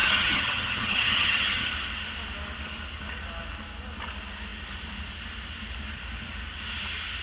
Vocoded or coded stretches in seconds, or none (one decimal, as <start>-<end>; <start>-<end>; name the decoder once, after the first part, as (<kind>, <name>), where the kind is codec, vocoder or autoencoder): 0.0-1.7 (vocoder, HiFi-GAN)